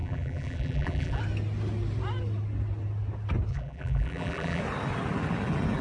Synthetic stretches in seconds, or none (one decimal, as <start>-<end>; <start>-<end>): 0.0-1.2; 3.5-4.6